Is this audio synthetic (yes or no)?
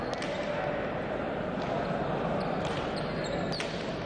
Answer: no